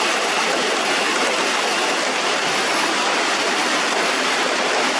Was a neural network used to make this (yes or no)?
no